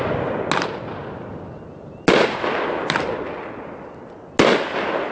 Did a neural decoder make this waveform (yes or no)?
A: no